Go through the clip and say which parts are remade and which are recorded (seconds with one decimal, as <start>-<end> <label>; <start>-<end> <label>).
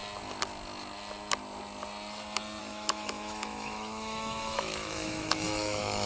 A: 0.0-2.6 recorded; 2.6-6.1 remade